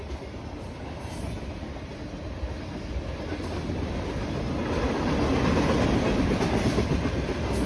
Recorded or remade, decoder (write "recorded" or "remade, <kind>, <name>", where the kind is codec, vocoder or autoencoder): recorded